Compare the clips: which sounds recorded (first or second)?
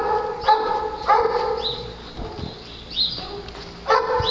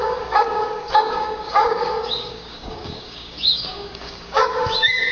first